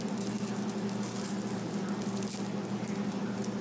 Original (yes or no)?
yes